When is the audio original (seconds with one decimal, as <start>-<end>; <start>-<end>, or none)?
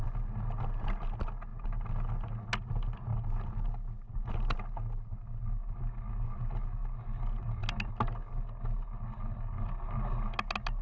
0.0-10.8